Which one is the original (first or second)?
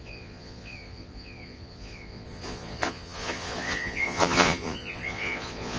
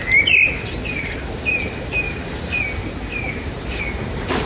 second